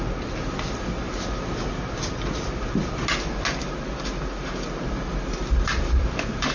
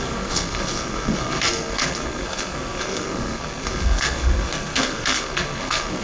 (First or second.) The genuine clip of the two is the first